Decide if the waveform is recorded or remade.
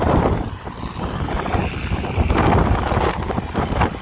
recorded